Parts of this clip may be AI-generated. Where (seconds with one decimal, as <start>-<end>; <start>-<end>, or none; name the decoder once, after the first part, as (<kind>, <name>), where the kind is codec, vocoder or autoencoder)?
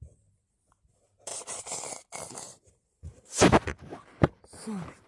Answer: 1.3-1.8 (vocoder, BigVGAN v2); 2.5-5.1